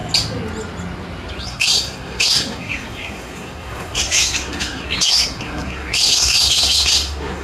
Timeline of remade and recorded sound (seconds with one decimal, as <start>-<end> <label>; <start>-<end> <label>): 0.0-1.4 recorded; 1.4-7.4 remade